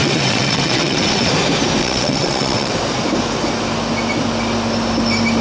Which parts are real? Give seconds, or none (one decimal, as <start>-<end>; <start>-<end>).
1.3-1.8; 2.7-5.4